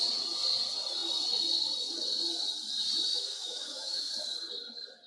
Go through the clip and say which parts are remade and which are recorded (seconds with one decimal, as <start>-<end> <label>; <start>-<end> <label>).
0.0-3.1 recorded; 3.1-4.1 remade; 4.1-5.1 recorded